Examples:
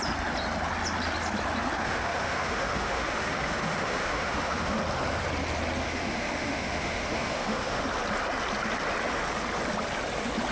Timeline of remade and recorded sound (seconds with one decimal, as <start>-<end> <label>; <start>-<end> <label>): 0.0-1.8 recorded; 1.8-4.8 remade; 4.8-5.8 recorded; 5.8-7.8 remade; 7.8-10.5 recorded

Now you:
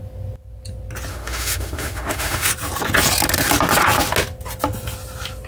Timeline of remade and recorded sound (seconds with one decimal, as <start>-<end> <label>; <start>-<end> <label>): 0.0-1.1 recorded; 1.1-2.5 remade; 2.5-5.5 recorded

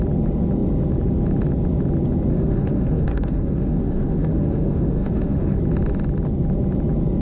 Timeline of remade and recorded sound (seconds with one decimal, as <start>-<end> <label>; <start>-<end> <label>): 0.0-2.3 recorded; 2.3-5.6 remade; 5.6-7.2 recorded

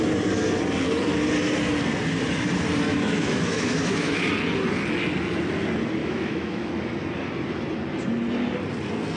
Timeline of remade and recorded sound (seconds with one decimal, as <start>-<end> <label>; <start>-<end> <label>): 0.0-2.9 recorded; 2.9-4.3 remade; 4.3-6.0 recorded; 6.0-6.7 remade; 6.7-9.2 recorded

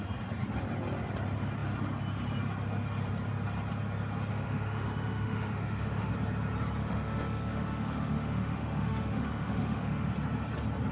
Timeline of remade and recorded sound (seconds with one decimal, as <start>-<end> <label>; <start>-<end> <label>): 0.0-4.3 recorded; 4.3-6.1 remade; 6.1-6.8 recorded; 6.8-10.1 remade; 10.1-10.9 recorded